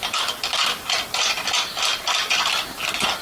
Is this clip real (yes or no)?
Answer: yes